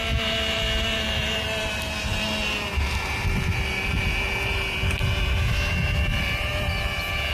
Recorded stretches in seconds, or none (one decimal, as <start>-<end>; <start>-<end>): none